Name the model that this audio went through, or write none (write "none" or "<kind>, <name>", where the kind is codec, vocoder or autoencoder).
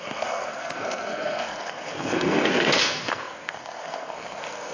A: codec, SNAC